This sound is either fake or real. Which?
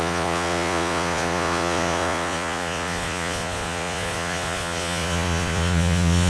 fake